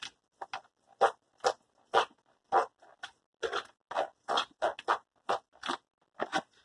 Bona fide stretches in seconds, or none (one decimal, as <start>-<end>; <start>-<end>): 0.0-6.6